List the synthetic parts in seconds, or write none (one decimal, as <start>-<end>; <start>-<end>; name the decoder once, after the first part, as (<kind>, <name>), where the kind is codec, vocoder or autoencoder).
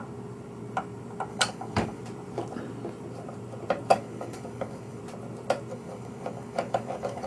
1.3-2.0 (codec, DAC); 3.9-5.0; 5.7-7.3